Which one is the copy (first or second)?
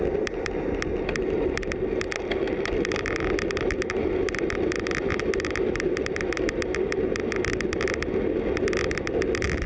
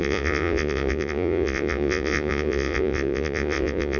second